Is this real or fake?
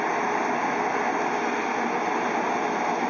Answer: real